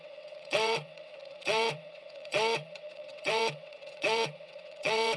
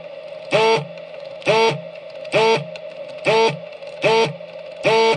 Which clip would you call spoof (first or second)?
first